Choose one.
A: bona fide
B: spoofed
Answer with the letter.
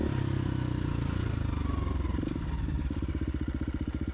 A